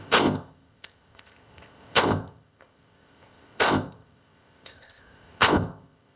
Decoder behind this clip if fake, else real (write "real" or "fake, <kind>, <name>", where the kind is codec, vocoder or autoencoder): fake, codec, ZipCodec